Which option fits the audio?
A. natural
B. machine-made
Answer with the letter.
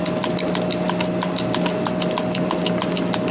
A